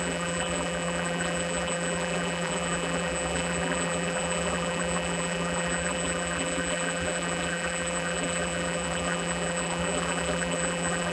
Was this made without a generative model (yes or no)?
no